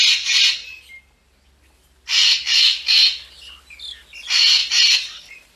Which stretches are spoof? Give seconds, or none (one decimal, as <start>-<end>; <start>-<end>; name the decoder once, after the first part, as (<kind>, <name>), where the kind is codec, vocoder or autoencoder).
4.6-5.6 (vocoder, BigVGAN v2)